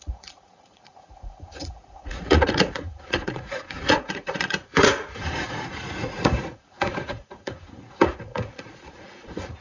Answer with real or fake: fake